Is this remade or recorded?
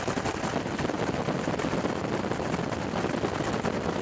recorded